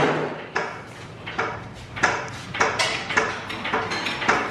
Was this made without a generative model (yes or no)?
yes